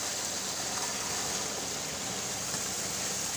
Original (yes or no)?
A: yes